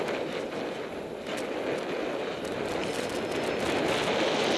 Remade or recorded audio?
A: recorded